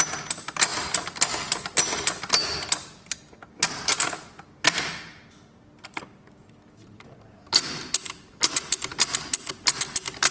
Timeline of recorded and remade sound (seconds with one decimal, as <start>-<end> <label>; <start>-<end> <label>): 0.0-10.3 recorded